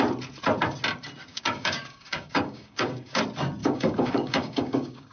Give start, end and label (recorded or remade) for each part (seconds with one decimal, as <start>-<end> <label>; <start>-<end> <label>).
0.0-1.3 recorded; 1.3-3.2 remade; 3.2-3.6 recorded; 3.6-5.1 remade